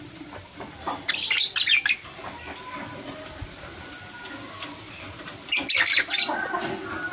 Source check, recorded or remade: recorded